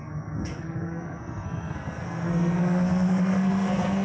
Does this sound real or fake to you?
fake